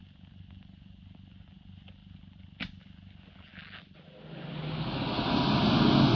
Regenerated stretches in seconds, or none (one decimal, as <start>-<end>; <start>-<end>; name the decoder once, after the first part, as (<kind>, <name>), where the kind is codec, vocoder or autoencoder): none